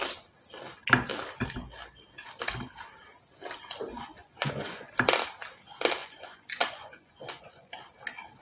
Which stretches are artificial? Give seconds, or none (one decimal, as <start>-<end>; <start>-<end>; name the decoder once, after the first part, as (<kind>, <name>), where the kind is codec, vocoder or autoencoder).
4.2-4.9 (vocoder, Vocos); 6.0-7.7